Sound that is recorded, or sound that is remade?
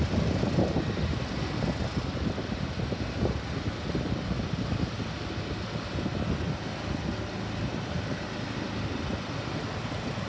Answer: recorded